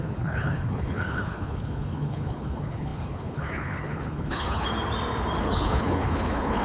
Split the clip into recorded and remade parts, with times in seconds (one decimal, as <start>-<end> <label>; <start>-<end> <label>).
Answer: 0.0-4.7 remade; 4.7-5.4 recorded; 5.4-6.6 remade